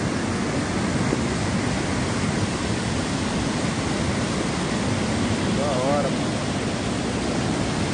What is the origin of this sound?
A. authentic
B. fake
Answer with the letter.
A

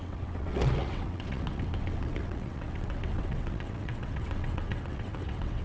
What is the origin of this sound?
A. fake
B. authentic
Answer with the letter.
A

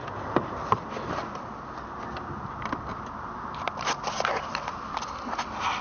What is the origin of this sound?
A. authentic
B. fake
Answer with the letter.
A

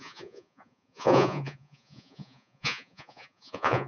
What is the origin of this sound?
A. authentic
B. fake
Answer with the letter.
B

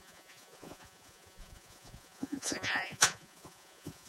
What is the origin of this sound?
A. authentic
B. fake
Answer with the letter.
B